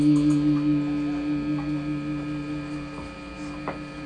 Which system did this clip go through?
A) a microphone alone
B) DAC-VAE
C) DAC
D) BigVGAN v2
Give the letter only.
A